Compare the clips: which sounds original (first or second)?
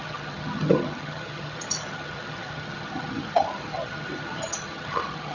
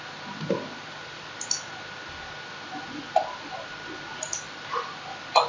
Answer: second